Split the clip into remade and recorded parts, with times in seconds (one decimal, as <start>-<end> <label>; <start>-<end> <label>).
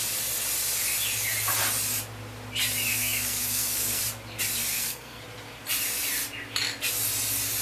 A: 0.0-2.9 recorded; 2.9-4.0 remade; 4.0-4.7 recorded; 4.7-5.2 remade; 5.2-7.6 recorded